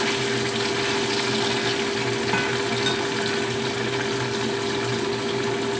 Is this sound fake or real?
real